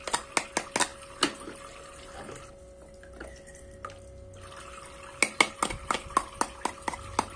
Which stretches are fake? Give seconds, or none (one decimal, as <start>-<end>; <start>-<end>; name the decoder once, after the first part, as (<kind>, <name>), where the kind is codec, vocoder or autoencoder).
none